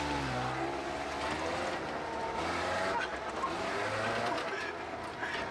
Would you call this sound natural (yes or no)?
yes